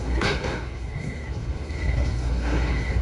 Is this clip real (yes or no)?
no